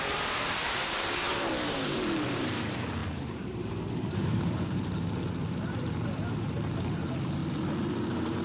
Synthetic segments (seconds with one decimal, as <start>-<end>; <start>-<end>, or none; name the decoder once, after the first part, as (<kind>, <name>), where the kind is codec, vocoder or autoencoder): 0.0-7.4 (vocoder, BigVGAN v2); 7.9-8.4